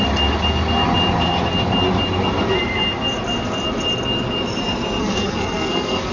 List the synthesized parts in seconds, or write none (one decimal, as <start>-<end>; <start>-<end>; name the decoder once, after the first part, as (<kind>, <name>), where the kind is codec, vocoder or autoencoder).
5.0-6.1 (codec, SNAC)